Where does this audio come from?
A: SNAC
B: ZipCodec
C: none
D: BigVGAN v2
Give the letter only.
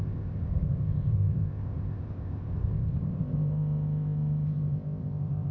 B